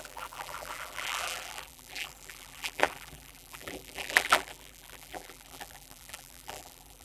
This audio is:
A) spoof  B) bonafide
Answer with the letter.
A